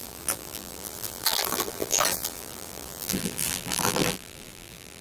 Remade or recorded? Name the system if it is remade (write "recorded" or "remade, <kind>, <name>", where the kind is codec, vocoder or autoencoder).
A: remade, vocoder, BigVGAN v2